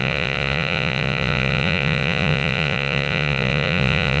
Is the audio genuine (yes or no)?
no